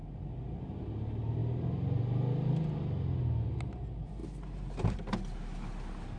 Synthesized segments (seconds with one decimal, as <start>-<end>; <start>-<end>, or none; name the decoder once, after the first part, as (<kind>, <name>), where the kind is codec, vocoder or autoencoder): none